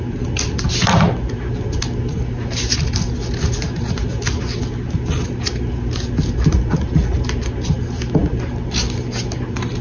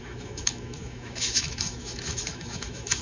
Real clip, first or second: first